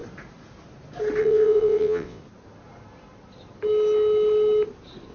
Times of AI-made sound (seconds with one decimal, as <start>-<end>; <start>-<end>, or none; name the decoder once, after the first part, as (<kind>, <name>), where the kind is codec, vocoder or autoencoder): 1.2-2.2 (vocoder, WaveNeXt)